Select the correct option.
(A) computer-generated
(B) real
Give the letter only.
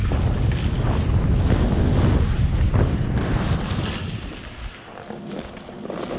B